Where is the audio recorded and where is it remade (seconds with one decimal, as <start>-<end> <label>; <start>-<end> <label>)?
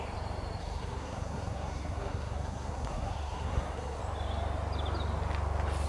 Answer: 0.0-0.6 recorded; 0.6-4.0 remade; 4.0-5.9 recorded